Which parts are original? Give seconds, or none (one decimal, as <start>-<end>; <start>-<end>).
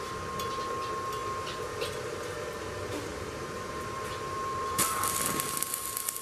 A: 0.0-3.1; 4.8-6.2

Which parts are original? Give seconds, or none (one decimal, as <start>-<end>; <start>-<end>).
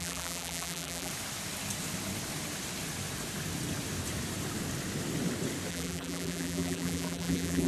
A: 1.1-5.7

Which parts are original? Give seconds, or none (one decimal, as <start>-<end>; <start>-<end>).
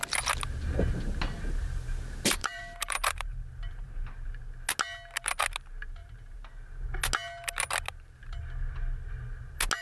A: 0.0-2.4; 4.4-6.0; 6.5-9.8